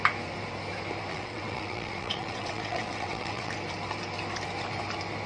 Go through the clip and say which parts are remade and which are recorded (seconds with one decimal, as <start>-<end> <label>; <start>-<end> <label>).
0.0-1.1 recorded; 1.1-3.5 remade; 3.5-5.3 recorded